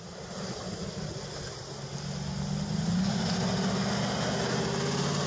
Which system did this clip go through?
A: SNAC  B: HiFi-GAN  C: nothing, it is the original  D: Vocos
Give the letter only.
C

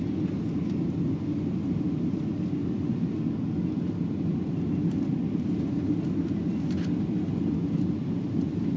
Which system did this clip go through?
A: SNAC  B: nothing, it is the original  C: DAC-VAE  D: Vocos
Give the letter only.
B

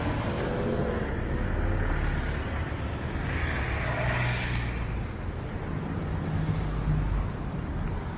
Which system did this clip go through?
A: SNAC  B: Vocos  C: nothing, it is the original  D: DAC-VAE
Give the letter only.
C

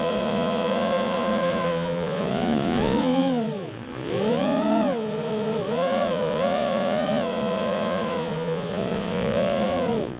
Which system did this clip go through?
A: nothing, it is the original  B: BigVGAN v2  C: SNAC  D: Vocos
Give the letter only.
D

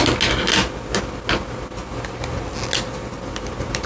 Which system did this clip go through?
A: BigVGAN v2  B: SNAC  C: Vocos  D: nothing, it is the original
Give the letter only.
D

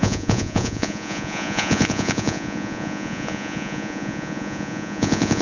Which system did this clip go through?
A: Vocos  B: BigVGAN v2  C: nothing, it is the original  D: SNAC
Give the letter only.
A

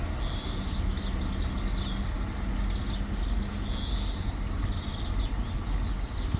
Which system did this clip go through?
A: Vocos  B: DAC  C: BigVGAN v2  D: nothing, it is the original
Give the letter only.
D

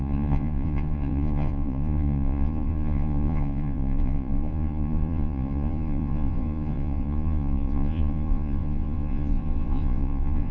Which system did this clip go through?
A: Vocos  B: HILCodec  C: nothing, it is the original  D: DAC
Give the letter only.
A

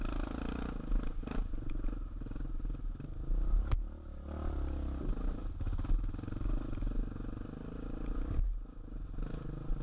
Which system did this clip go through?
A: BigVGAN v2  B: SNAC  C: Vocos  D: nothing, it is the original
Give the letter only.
D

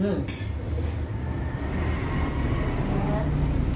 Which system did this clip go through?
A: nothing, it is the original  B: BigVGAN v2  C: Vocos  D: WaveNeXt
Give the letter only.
A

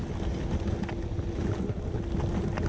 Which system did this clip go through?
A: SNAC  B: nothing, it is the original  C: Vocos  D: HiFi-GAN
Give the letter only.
B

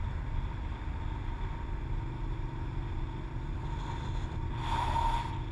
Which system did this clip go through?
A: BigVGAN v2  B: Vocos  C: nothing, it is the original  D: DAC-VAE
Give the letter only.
C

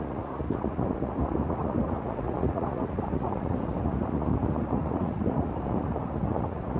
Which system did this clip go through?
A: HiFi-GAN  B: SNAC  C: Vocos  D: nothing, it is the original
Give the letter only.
C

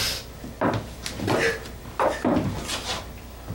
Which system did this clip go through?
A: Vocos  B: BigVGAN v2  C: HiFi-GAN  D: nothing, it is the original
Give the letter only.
D